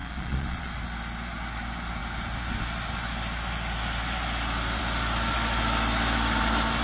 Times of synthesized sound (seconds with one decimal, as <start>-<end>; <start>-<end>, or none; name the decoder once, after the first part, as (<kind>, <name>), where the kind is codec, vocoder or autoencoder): 0.0-0.7 (vocoder, Vocos)